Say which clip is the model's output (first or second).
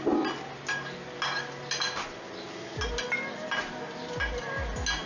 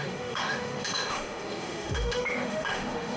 second